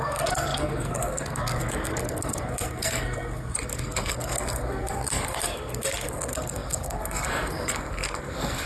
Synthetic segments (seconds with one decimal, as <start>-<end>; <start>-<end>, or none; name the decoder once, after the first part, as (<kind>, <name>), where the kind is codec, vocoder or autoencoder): 0.0-8.7 (codec, SNAC)